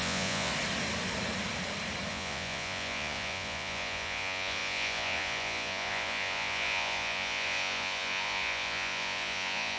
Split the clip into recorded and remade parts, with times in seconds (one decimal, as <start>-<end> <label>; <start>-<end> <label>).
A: 0.0-0.5 remade; 0.5-2.1 recorded; 2.1-9.8 remade